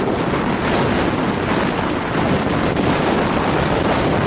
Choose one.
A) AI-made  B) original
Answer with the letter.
B